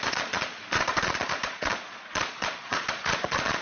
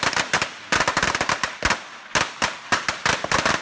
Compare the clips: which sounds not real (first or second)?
first